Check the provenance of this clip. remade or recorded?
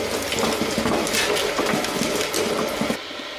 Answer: recorded